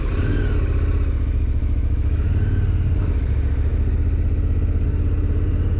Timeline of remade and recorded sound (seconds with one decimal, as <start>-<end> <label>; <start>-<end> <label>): 0.0-1.6 recorded; 1.6-2.3 remade; 2.3-5.8 recorded